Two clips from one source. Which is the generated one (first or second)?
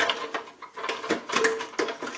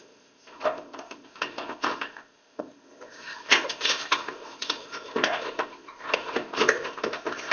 second